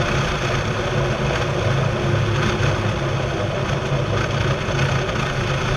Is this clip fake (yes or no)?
no